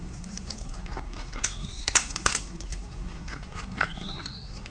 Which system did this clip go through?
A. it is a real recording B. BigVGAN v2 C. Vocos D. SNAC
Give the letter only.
D